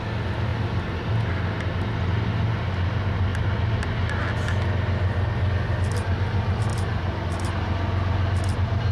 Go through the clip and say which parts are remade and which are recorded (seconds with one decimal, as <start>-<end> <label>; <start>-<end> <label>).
0.0-8.9 recorded